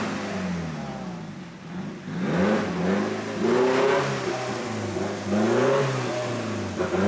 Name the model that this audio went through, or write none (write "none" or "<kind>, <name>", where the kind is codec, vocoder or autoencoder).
none